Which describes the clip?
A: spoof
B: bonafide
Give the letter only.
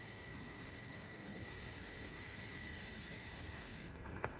A